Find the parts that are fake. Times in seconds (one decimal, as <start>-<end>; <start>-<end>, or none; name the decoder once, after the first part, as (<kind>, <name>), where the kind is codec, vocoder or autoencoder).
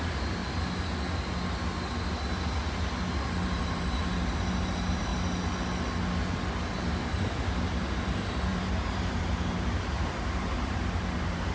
0.0-0.4 (vocoder, BigVGAN v2); 3.1-5.1; 6.7-11.5